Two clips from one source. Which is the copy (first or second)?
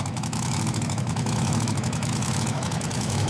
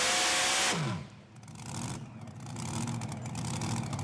first